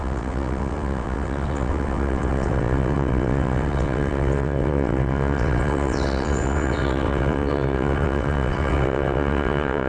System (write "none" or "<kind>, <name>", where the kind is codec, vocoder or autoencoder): vocoder, WaveNeXt